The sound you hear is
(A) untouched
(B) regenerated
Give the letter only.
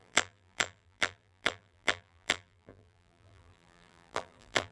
B